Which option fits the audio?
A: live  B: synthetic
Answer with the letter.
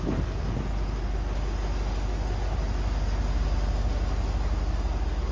A